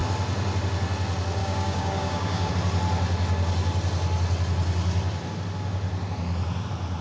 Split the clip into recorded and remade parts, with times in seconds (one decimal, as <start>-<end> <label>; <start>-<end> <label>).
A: 0.0-1.4 recorded; 1.4-2.5 remade; 2.5-7.0 recorded